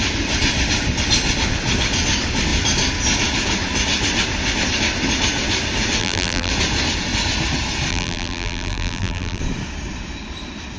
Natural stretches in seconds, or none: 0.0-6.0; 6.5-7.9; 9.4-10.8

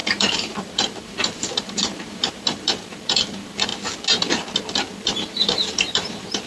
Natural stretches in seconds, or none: 3.7-4.8

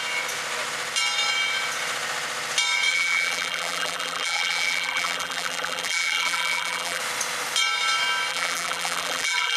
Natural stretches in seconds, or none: 0.0-2.9; 7.0-8.3

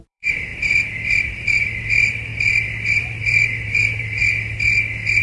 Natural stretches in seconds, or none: 0.5-1.2; 2.3-3.0; 4.2-5.2

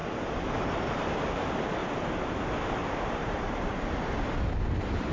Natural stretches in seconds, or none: 0.0-1.8; 2.3-2.8

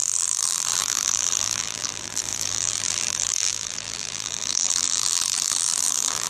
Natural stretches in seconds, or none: none

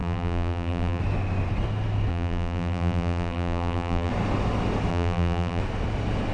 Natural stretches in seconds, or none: 1.0-2.1; 4.1-4.9; 5.6-6.3

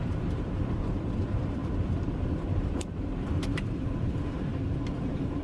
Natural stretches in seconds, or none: 4.5-5.0